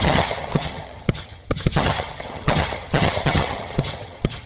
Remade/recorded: remade